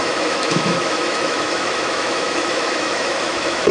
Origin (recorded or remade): remade